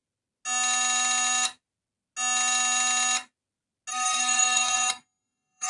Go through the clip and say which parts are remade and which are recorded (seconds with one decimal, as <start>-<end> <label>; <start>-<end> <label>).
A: 0.0-3.9 recorded; 3.9-5.7 remade